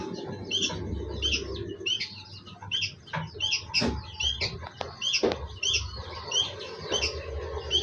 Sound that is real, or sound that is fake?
real